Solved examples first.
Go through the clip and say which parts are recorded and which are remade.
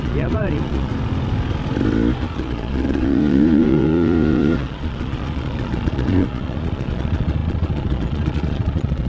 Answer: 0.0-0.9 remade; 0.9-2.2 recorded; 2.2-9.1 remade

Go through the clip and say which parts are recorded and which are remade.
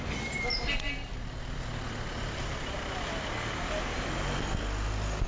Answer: 0.0-5.3 recorded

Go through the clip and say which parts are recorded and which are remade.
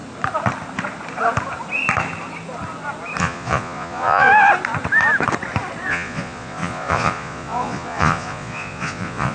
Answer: 0.0-3.2 recorded; 3.2-4.3 remade; 4.3-5.9 recorded; 5.9-9.3 remade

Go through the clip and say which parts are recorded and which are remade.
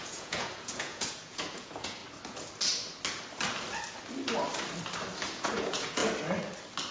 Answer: 0.0-2.0 remade; 2.0-5.3 recorded; 5.3-6.0 remade; 6.0-6.9 recorded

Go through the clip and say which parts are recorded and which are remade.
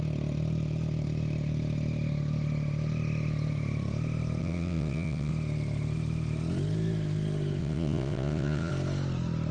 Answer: 0.0-4.4 recorded; 4.4-5.3 remade; 5.3-7.6 recorded; 7.6-8.7 remade; 8.7-9.5 recorded